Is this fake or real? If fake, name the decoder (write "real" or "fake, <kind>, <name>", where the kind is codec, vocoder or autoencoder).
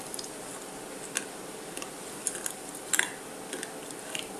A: real